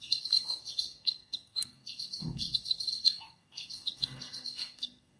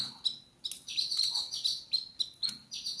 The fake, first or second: first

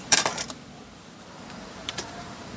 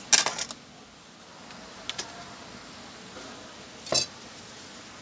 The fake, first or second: first